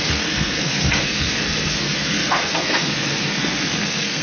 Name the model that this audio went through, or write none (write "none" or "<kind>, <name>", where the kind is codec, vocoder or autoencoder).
codec, SNAC